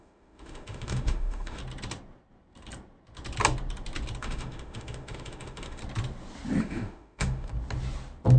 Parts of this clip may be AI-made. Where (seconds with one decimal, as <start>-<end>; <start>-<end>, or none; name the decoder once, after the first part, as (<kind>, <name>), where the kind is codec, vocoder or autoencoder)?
0.0-1.6 (autoencoder, DAC-VAE); 4.2-5.8; 6.6-7.5